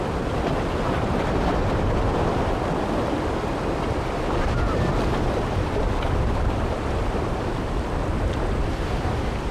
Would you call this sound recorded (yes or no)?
no